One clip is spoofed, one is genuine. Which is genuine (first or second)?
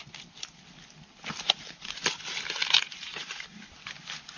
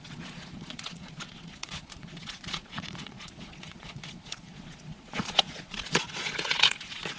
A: first